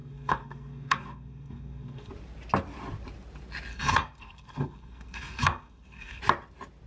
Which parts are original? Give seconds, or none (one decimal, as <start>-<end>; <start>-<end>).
2.1-3.7; 6.2-6.9